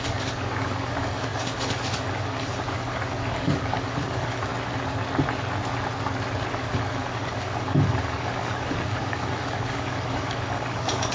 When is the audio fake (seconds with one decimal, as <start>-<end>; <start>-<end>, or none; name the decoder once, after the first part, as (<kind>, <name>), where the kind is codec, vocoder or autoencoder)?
0.0-4.5 (codec, DAC); 6.5-11.1